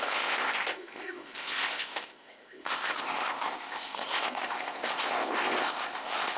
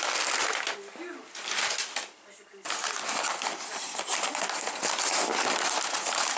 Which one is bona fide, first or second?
second